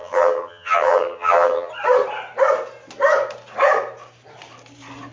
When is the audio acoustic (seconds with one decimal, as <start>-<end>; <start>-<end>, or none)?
1.7-5.1